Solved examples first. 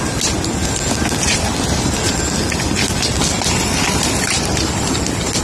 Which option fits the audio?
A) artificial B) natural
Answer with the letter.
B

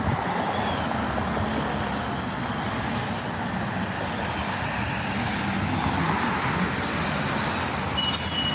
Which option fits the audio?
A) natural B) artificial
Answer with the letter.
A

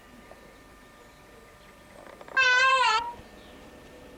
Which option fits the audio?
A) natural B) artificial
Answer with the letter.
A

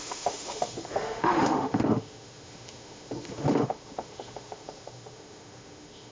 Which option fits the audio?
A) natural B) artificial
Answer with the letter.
B